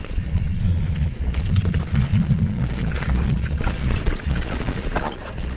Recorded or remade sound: remade